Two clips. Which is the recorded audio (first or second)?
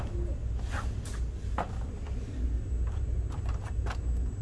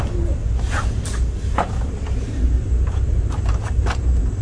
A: first